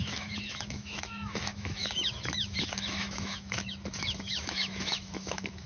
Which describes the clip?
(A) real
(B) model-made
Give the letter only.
B